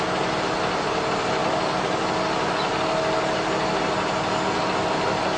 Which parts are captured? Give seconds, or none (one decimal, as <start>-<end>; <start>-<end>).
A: 0.0-5.4